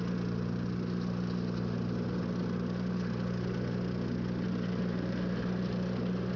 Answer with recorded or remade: recorded